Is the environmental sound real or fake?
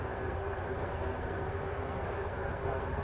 fake